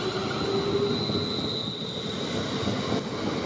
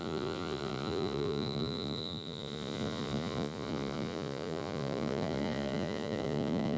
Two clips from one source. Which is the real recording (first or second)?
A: first